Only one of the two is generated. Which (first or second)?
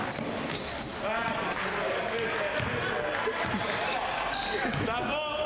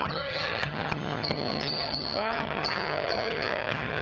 second